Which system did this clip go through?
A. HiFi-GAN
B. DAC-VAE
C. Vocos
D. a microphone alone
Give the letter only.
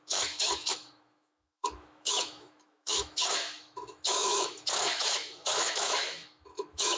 B